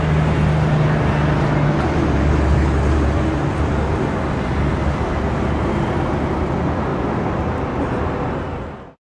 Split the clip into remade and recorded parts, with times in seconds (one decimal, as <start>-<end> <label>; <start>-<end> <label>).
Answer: 0.0-9.1 recorded